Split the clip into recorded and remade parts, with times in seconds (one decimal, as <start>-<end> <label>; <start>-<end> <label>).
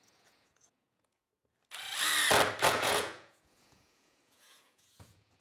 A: 0.0-1.3 remade; 1.3-2.7 recorded; 2.7-5.4 remade